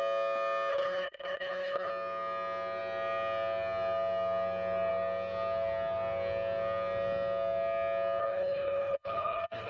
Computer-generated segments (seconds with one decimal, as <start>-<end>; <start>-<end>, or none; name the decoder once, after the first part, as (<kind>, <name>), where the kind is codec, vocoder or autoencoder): 0.7-1.9 (codec, HILCodec); 8.2-9.7